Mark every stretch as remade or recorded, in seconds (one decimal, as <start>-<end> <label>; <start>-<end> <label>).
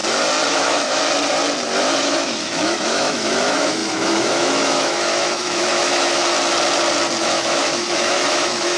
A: 0.0-0.5 recorded; 0.5-1.0 remade; 1.0-2.0 recorded; 2.0-6.2 remade; 6.2-7.2 recorded; 7.2-8.8 remade